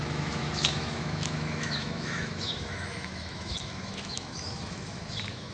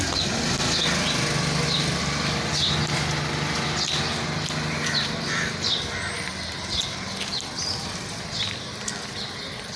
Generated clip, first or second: first